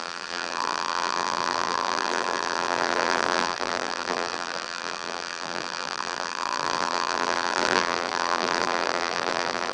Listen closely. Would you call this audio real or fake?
fake